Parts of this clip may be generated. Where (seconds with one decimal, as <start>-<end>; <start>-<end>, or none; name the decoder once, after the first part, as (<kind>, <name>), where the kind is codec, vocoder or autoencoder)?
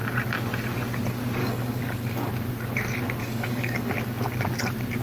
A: 1.4-2.3 (codec, DAC); 3.2-3.9